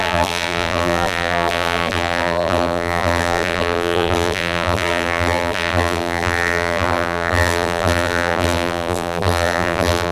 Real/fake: fake